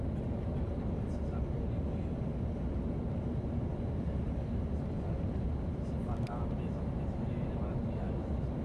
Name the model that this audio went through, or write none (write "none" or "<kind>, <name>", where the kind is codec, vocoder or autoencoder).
none